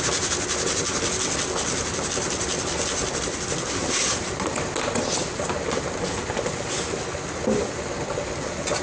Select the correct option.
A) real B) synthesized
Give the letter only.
A